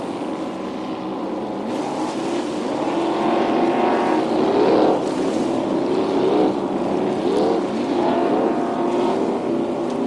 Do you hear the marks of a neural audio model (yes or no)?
no